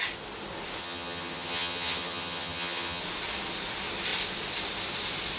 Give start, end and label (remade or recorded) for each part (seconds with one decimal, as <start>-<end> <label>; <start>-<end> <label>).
0.0-0.8 recorded; 0.8-3.0 remade; 3.0-5.4 recorded